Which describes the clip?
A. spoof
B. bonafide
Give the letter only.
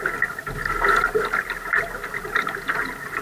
B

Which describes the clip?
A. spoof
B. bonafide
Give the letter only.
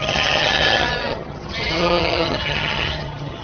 A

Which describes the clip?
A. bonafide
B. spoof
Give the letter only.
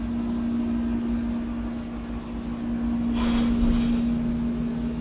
A